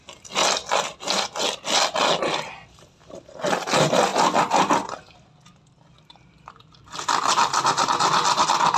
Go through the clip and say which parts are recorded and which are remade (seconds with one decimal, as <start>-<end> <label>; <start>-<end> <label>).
0.0-8.8 recorded